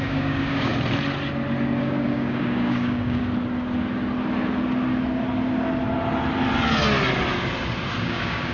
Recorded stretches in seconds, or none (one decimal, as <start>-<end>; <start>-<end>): 0.7-1.8; 3.2-8.0